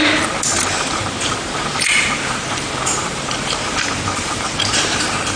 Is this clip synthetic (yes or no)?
yes